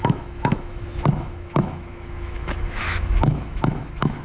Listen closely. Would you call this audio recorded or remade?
remade